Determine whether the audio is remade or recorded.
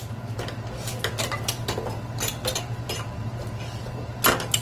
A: recorded